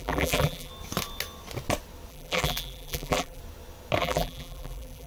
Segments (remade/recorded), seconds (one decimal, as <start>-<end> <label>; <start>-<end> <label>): 0.0-0.7 remade; 0.7-2.1 recorded; 2.1-3.4 remade; 3.4-4.0 recorded; 4.0-5.1 remade

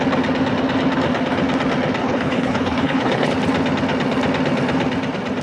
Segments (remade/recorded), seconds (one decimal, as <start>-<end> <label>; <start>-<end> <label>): 0.0-2.0 recorded; 2.0-3.3 remade; 3.3-5.4 recorded

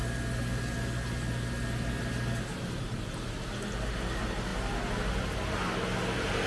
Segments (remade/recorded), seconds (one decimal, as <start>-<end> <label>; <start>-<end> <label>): 0.0-6.5 recorded